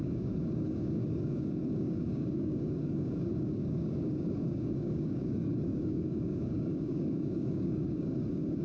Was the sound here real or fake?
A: fake